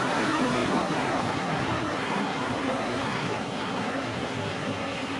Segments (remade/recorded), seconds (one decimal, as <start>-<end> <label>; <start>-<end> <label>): 0.0-5.2 remade